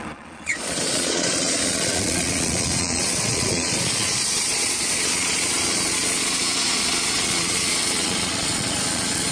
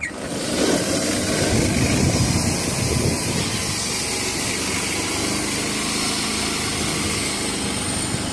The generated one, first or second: first